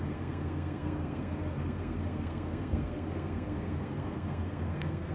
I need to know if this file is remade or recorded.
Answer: remade